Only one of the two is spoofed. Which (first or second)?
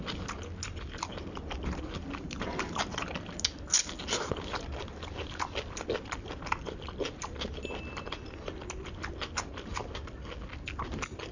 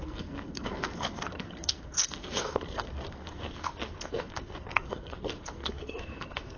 second